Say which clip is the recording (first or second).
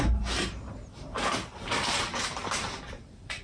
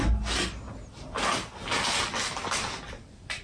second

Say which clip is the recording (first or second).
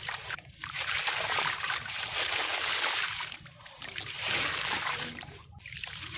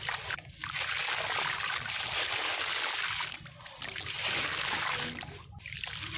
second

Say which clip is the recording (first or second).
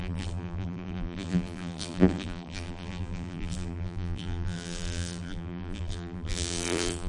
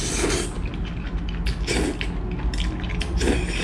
second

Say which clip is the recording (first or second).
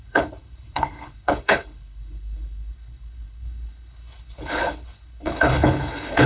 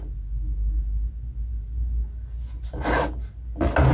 second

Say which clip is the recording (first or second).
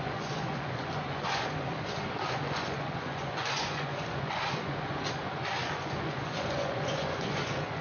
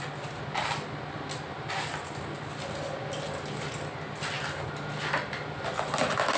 second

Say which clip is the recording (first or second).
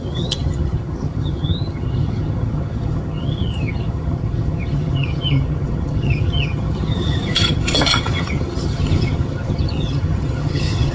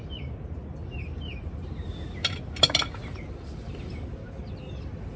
second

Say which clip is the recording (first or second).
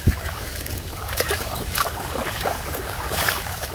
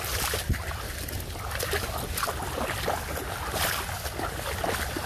second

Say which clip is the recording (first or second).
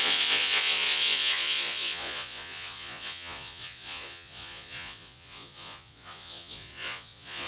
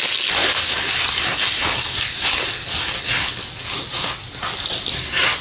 second